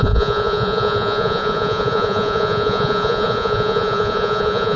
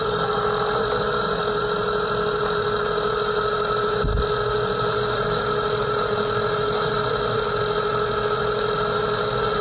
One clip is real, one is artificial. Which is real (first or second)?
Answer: second